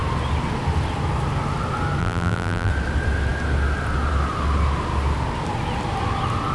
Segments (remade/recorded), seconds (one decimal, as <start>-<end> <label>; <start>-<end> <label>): 0.0-2.0 recorded; 2.0-2.7 remade; 2.7-6.5 recorded